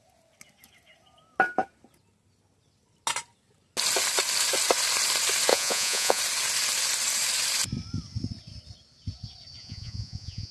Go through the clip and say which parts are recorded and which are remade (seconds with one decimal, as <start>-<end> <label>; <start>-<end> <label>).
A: 0.0-5.5 recorded; 5.5-6.2 remade; 6.2-9.6 recorded; 9.6-10.5 remade

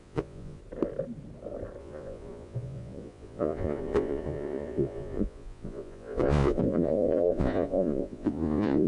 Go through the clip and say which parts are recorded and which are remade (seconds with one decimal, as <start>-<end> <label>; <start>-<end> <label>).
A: 0.0-0.6 remade; 0.6-1.8 recorded; 1.8-8.9 remade

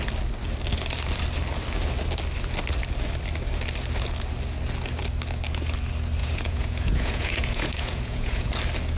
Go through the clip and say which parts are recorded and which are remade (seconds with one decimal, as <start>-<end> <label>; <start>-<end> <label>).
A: 0.0-6.2 recorded; 6.2-8.5 remade; 8.5-9.0 recorded

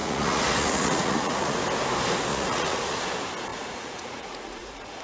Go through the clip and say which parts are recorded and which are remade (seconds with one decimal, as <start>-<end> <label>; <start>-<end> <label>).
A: 0.0-1.6 remade; 1.6-2.3 recorded; 2.3-3.1 remade; 3.1-3.5 recorded; 3.5-5.0 remade

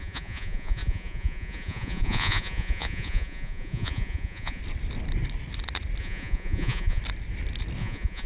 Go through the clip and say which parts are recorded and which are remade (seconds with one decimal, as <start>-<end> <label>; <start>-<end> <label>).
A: 0.0-4.6 remade; 4.6-6.0 recorded; 6.0-7.0 remade; 7.0-7.8 recorded; 7.8-8.3 remade

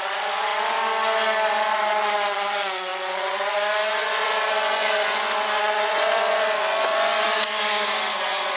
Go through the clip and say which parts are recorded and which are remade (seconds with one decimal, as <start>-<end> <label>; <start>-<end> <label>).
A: 0.0-0.5 remade; 0.5-1.7 recorded; 1.7-8.6 remade